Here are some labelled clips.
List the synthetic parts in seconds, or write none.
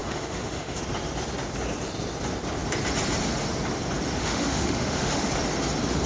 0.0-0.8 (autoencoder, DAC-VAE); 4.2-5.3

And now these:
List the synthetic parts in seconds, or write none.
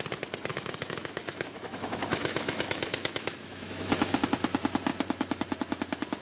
0.5-4.2 (autoencoder, DAC-VAE)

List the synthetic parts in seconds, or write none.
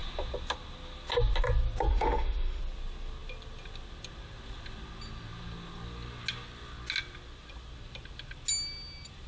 1.9-2.6 (autoencoder, DAC-VAE)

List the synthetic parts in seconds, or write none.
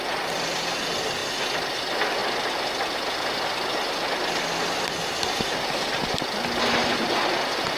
none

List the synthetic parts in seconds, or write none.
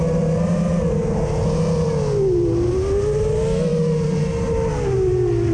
none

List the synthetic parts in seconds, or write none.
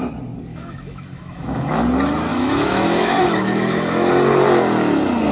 0.5-1.7 (autoencoder, DAC-VAE); 2.3-4.1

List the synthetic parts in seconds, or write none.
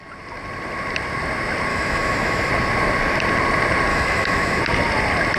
1.7-2.5 (autoencoder, DAC-VAE); 3.9-4.6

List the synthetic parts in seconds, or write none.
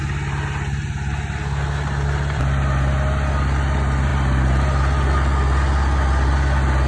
none